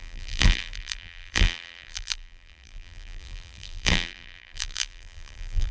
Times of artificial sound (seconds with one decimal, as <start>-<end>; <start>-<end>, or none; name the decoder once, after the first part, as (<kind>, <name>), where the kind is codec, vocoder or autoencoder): 0.0-5.7 (vocoder, BigVGAN v2)